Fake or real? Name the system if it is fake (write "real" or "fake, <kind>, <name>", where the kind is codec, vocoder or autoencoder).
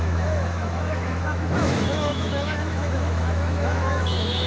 fake, autoencoder, DAC-VAE